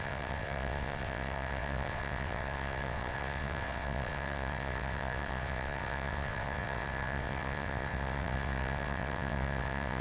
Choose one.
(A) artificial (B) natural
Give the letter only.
A